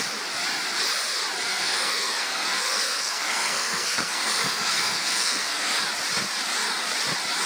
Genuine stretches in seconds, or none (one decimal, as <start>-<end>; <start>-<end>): 0.0-1.5; 5.8-7.5